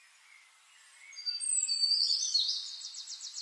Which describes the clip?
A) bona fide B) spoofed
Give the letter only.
A